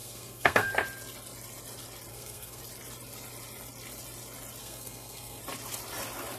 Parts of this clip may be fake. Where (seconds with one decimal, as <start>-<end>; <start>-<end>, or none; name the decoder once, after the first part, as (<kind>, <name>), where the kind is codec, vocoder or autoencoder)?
0.0-0.7 (codec, SNAC); 2.1-2.6; 4.6-5.4